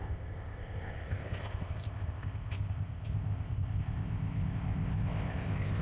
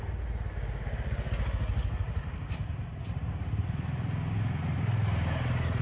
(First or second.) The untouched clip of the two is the second